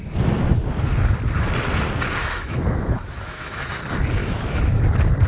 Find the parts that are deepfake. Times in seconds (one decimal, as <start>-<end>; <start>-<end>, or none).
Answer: 2.2-3.8; 4.2-4.8